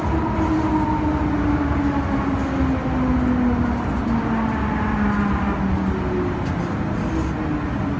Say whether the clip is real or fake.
real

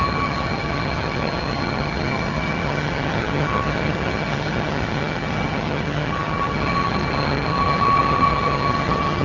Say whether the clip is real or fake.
fake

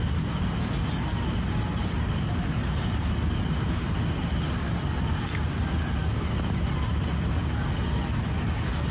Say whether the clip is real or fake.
real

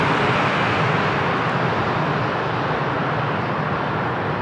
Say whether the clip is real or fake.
real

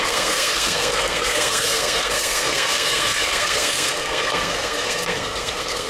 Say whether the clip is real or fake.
fake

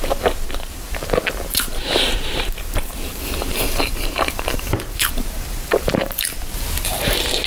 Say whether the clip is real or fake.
fake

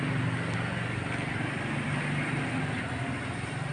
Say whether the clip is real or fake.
real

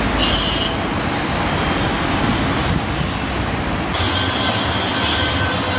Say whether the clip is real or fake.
real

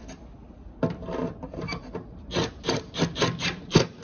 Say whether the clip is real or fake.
real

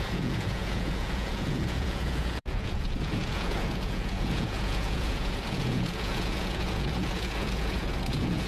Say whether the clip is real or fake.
fake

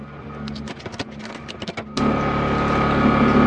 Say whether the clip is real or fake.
real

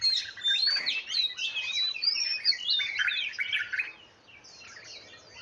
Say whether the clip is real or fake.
real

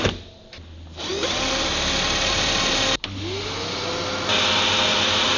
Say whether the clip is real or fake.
real